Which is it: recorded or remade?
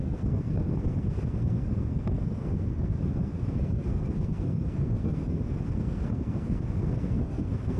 remade